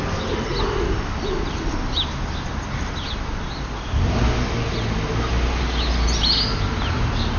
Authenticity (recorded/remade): recorded